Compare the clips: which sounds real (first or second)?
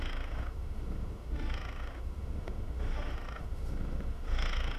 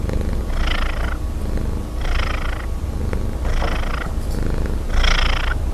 second